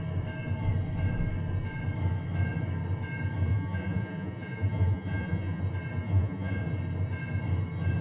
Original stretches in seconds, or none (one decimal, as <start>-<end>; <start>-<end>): 0.0-3.5; 5.6-6.0; 6.6-8.0